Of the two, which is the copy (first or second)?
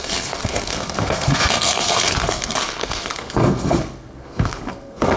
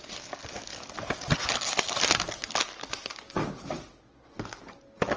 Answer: first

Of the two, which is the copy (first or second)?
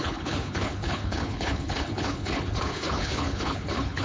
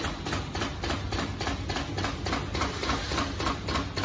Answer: first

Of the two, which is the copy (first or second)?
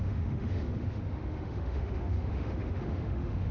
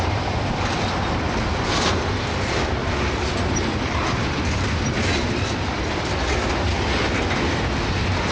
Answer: first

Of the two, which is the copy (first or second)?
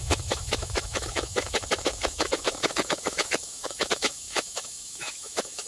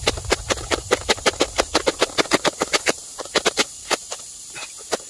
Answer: first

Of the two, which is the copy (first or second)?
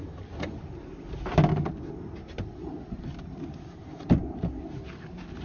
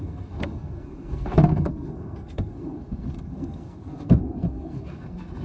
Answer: second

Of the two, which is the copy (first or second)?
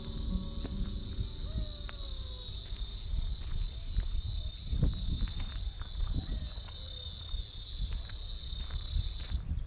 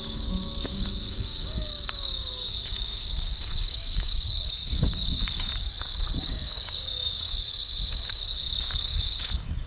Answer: second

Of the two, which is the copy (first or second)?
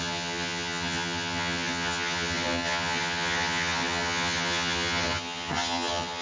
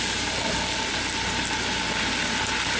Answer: first